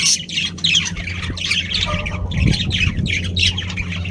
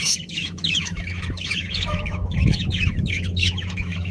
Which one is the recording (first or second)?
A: first